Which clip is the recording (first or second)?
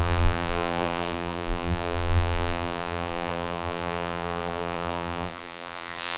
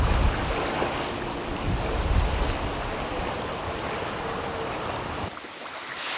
second